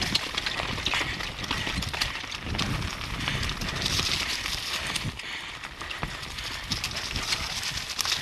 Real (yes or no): yes